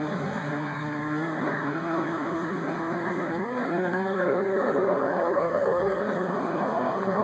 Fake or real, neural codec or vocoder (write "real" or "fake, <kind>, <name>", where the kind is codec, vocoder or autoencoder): fake, codec, SNAC